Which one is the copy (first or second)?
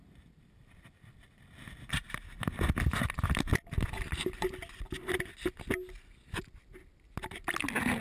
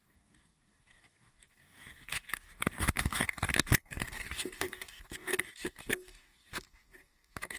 second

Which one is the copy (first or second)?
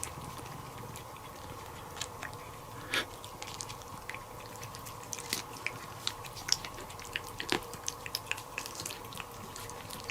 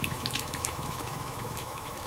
second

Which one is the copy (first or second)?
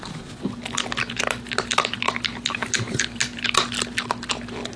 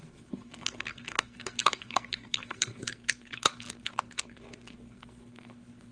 second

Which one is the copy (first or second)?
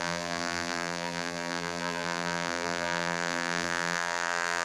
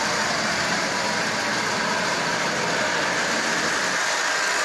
first